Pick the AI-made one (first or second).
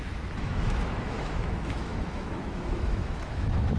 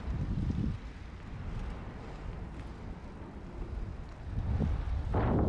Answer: first